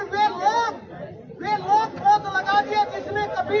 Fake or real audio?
real